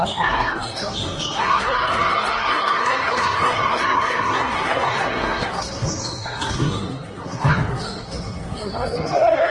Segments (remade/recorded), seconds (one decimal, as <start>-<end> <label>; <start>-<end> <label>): 0.0-9.5 remade

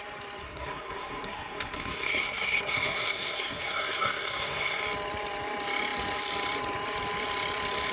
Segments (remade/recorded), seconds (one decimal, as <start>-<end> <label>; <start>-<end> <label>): 0.0-0.4 recorded; 0.4-4.8 remade; 4.8-7.9 recorded

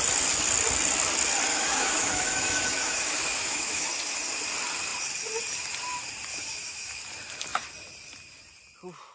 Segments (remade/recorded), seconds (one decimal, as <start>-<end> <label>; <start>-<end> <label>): 0.0-1.5 recorded; 1.5-3.9 remade; 3.9-6.3 recorded; 6.3-7.0 remade; 7.0-9.1 recorded

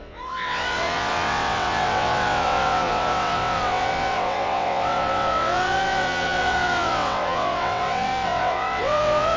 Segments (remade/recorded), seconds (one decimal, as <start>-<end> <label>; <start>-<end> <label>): 0.0-9.4 remade

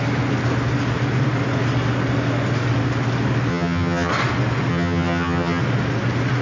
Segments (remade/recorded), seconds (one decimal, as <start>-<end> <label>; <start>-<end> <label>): 0.0-3.5 recorded; 3.5-4.1 remade; 4.1-4.7 recorded; 4.7-5.6 remade; 5.6-6.4 recorded